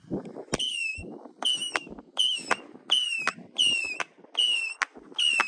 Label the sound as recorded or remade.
recorded